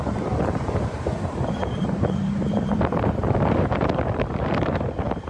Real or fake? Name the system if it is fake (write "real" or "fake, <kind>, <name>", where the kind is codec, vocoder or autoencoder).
fake, vocoder, BigVGAN v2